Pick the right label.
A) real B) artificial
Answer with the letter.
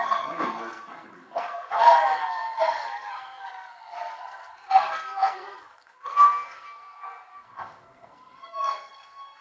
B